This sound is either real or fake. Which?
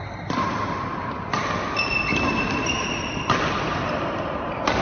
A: fake